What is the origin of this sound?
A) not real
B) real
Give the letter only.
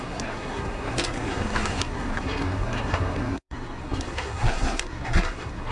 A